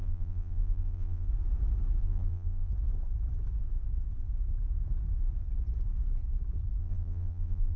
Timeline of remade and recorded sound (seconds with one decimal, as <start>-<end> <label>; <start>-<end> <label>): 0.0-1.3 remade; 1.3-2.0 recorded; 2.0-2.7 remade; 2.7-6.8 recorded; 6.8-7.8 remade